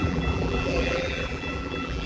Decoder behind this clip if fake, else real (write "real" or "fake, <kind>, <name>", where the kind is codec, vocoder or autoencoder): fake, vocoder, BigVGAN v2